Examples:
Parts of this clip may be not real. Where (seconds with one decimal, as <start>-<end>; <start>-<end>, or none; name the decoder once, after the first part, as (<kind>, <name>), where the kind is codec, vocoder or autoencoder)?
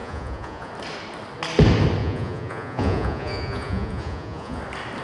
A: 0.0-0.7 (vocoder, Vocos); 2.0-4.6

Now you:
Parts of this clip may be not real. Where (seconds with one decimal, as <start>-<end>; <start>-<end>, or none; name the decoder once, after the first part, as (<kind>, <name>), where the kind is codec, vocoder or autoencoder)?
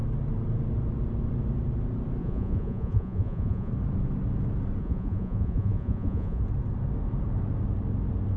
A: 2.2-3.7 (vocoder, Vocos); 4.8-6.4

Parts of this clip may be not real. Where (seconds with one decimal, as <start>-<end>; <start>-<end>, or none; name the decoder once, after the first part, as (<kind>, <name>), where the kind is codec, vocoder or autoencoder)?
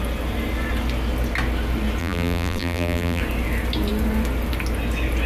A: 2.0-3.2 (vocoder, BigVGAN v2)